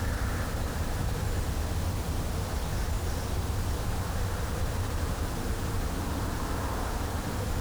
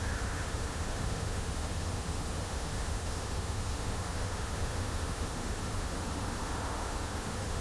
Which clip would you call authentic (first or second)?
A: first